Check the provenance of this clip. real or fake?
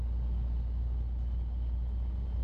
real